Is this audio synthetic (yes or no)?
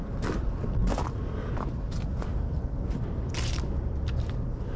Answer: no